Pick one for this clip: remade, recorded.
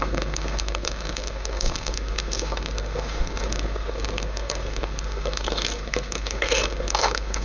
remade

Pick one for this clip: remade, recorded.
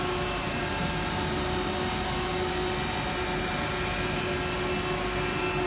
recorded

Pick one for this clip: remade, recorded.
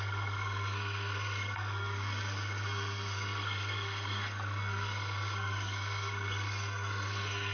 remade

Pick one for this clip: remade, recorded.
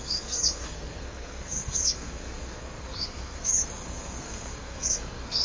remade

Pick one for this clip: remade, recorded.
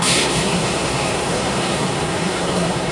remade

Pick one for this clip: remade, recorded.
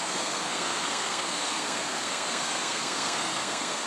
remade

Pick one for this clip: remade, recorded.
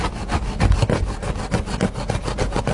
recorded